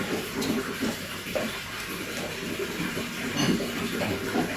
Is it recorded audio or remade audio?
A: recorded